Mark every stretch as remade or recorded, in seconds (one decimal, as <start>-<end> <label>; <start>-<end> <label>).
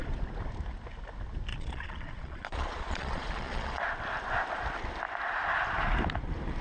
0.0-1.5 recorded; 1.5-3.8 remade; 3.8-6.6 recorded